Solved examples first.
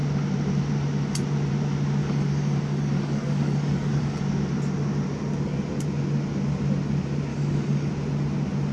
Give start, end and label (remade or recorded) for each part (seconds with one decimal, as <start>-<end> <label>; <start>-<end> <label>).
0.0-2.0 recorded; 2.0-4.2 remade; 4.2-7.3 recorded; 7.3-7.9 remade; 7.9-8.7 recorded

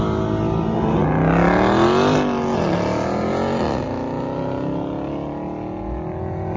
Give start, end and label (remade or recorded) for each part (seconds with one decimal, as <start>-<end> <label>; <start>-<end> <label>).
0.0-6.6 recorded

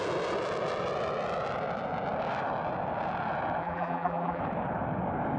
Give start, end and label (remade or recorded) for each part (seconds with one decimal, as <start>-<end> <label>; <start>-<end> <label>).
0.0-3.6 recorded; 3.6-4.4 remade; 4.4-5.4 recorded

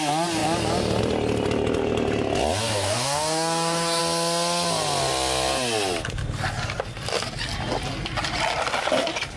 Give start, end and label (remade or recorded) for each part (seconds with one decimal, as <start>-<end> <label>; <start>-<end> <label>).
0.0-2.6 recorded; 2.6-4.0 remade; 4.0-9.4 recorded

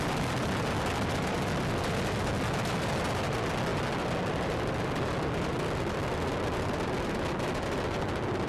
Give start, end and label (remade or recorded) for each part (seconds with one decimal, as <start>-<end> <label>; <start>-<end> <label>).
0.0-8.5 recorded